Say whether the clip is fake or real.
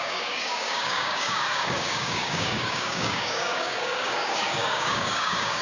fake